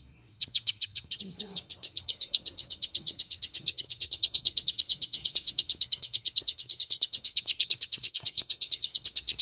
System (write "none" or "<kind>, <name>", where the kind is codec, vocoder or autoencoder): codec, SNAC